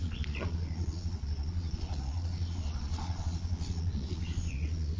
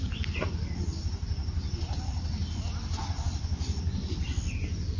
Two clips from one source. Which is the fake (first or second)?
first